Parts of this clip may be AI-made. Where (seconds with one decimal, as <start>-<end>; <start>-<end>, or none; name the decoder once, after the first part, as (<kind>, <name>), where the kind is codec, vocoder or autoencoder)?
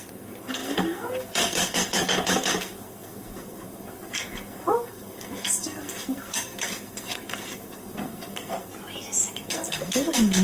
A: 0.0-8.7 (codec, SNAC); 9.3-10.4